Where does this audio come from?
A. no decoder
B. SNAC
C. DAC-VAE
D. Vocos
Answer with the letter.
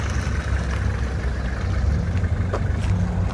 A